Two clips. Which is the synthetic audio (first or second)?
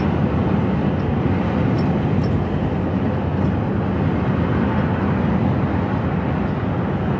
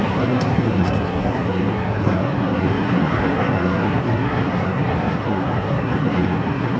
second